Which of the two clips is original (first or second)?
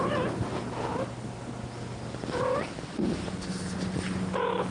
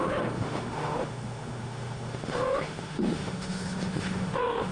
first